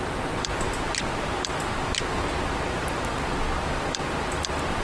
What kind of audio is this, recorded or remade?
recorded